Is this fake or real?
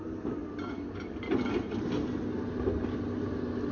real